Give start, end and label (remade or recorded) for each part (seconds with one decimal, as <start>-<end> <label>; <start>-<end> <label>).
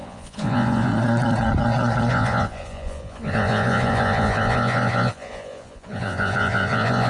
0.0-0.9 remade; 0.9-2.1 recorded; 2.1-7.1 remade